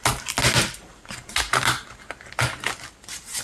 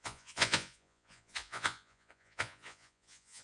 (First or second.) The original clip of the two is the first